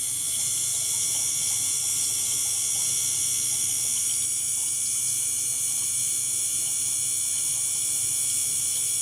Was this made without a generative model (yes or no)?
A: yes